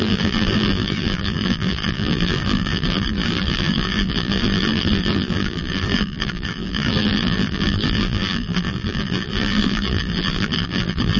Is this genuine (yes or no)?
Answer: no